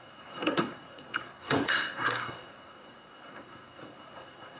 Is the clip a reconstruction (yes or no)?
yes